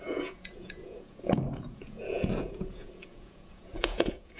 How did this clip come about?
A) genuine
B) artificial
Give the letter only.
B